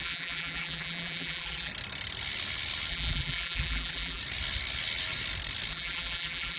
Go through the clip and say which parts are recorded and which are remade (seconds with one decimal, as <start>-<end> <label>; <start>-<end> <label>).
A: 0.0-1.7 remade; 1.7-2.9 recorded; 2.9-4.2 remade; 4.2-5.7 recorded; 5.7-6.6 remade